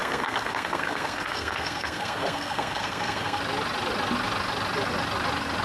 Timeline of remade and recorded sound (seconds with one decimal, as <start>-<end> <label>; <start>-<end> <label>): 0.0-3.4 remade; 3.4-5.6 recorded